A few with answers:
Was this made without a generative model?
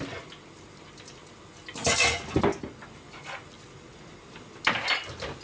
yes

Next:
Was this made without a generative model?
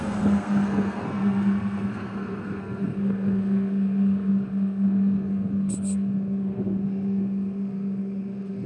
no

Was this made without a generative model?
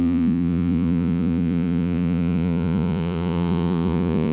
no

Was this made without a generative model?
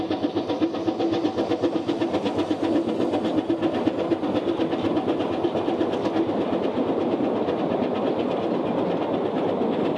yes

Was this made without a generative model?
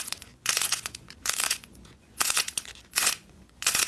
no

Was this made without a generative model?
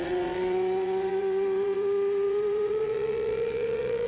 no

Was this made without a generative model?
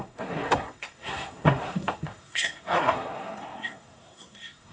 no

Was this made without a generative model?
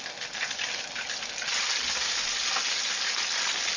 yes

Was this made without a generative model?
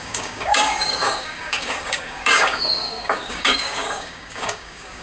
no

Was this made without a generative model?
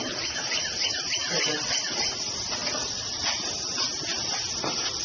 yes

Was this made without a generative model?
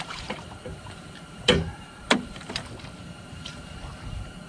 no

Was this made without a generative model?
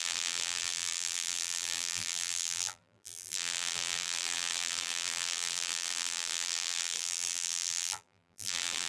no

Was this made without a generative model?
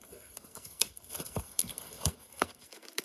no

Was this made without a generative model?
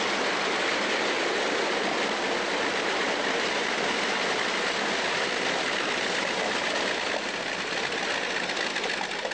yes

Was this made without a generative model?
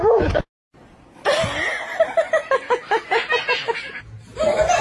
yes